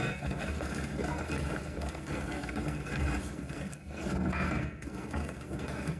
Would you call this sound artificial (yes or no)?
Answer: yes